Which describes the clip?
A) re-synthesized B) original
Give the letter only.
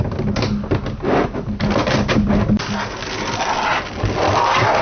B